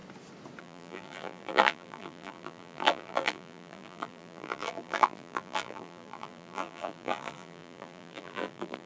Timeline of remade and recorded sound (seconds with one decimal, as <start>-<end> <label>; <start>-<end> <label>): 0.0-0.6 recorded; 0.6-8.9 remade

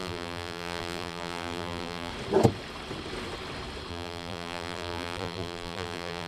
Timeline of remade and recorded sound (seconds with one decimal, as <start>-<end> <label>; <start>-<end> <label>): 0.0-2.1 remade; 2.1-3.9 recorded; 3.9-6.3 remade

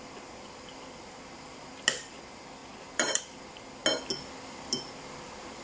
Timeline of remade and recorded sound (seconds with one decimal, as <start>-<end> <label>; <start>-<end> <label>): 0.0-2.6 recorded; 2.6-3.2 remade; 3.2-5.6 recorded

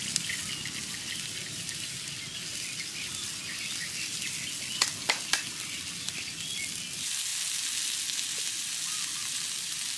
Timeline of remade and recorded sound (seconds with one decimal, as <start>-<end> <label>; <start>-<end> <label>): 0.0-10.0 recorded